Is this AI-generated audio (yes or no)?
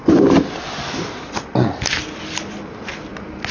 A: no